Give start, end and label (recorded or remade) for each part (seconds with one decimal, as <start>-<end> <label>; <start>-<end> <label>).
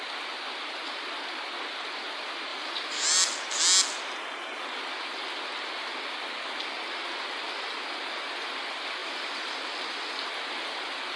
0.0-2.5 recorded; 2.5-3.6 remade; 3.6-9.0 recorded; 9.0-10.3 remade; 10.3-11.2 recorded